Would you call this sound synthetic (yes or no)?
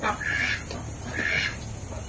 no